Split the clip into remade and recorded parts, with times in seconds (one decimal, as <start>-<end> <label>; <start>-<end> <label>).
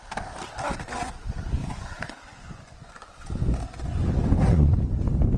0.0-1.6 recorded; 1.6-4.8 remade; 4.8-5.4 recorded